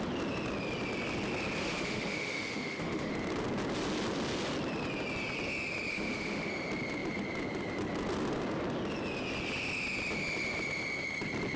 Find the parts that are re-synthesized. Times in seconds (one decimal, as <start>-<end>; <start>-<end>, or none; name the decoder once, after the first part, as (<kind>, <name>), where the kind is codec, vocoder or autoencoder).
1.6-3.1 (autoencoder, DAC-VAE); 5.9-6.5